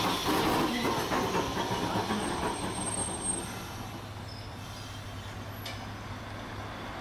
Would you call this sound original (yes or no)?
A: yes